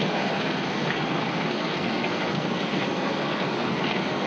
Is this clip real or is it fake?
fake